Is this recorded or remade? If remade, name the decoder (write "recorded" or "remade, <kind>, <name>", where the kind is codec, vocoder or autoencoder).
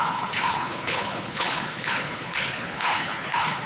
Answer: remade, codec, HILCodec